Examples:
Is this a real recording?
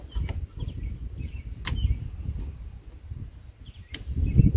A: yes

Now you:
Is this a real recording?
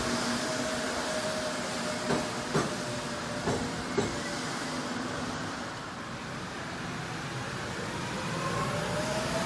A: yes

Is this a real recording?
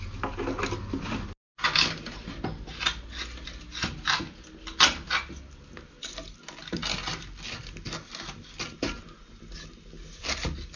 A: yes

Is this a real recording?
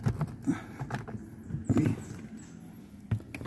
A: yes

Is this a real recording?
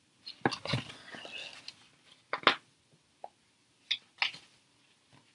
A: yes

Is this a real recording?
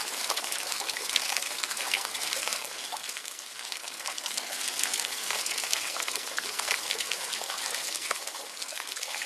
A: no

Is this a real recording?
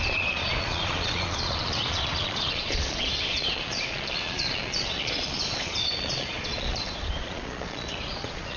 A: no